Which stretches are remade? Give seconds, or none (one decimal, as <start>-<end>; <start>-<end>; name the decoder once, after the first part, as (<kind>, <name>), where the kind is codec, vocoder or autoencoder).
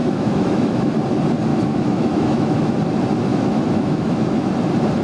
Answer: 0.0-0.9 (autoencoder, DAC-VAE); 1.5-2.8; 3.3-4.5